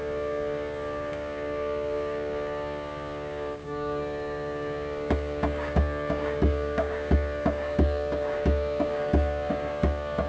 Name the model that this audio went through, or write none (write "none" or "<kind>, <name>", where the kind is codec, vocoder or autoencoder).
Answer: codec, DAC